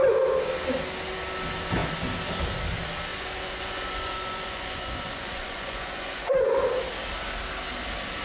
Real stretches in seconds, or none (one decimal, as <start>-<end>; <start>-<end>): 0.0-3.1; 6.6-8.2